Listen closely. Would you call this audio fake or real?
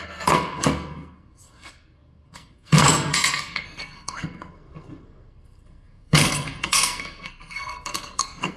fake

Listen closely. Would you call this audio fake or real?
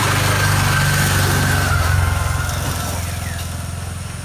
real